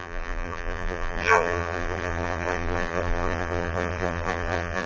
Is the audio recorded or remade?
remade